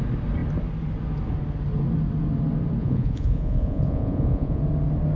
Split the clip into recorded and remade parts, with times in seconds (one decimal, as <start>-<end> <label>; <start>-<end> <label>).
0.0-2.8 recorded; 2.8-4.6 remade; 4.6-5.2 recorded